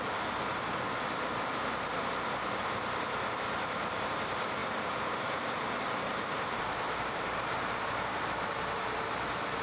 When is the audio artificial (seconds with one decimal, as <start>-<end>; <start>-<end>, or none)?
4.6-9.6